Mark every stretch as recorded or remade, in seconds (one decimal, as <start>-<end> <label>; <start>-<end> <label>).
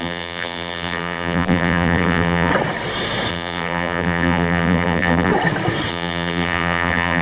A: 0.0-2.5 remade; 2.5-3.3 recorded; 3.3-5.3 remade; 5.3-5.9 recorded; 5.9-7.2 remade